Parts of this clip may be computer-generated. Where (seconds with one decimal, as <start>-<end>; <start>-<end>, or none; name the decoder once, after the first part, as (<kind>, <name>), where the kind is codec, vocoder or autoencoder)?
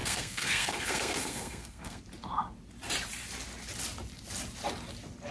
0.0-2.0 (codec, SNAC)